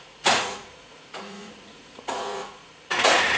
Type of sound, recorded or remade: remade